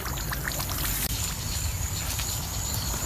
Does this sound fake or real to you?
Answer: real